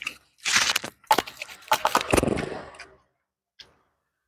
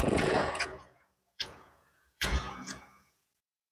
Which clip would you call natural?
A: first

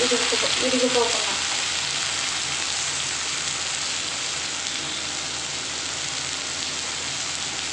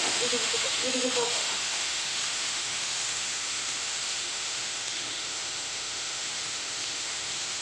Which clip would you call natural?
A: first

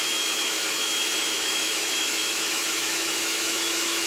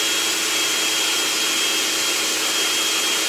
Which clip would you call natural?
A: second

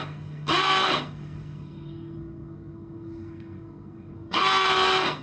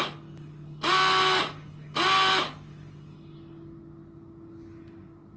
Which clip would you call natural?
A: second